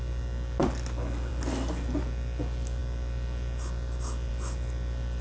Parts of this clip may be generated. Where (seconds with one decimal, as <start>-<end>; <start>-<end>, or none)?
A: none